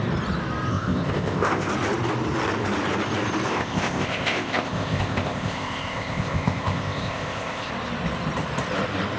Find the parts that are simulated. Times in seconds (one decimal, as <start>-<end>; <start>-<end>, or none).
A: 0.7-1.7; 3.5-7.7